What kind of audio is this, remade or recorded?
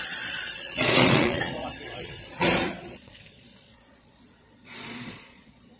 remade